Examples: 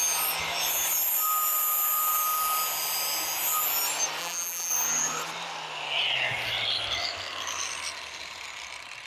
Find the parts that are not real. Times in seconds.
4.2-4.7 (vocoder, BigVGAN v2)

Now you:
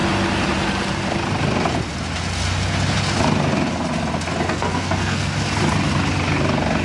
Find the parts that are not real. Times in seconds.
4.5-5.3 (codec, SNAC)

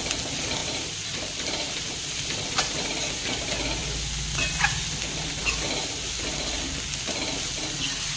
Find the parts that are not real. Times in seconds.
0.6-1.9 (vocoder, BigVGAN v2)